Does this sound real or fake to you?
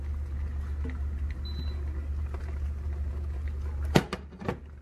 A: real